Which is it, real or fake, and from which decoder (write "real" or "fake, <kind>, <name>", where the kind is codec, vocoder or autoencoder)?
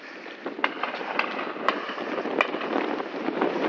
real